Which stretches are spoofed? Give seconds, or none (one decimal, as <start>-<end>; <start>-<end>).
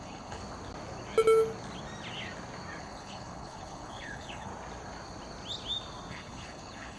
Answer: 0.0-0.4; 2.8-4.5; 6.1-7.0